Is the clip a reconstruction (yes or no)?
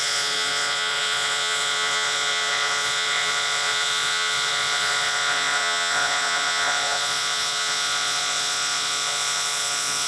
yes